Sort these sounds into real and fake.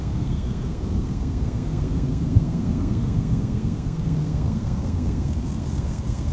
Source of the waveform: fake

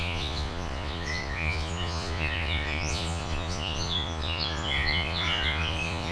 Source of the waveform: fake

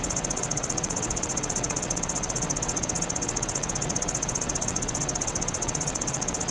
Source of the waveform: fake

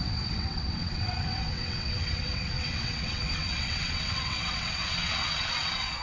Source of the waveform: fake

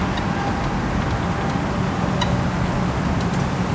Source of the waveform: real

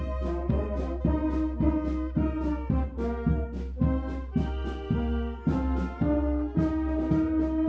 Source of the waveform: real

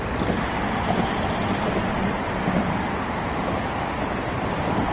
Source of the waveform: real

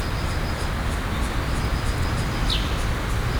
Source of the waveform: real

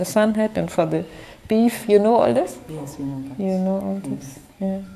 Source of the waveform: fake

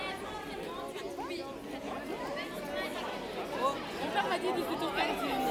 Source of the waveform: real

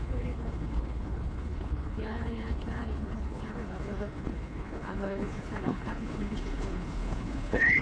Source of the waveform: fake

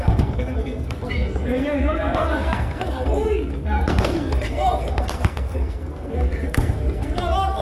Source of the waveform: fake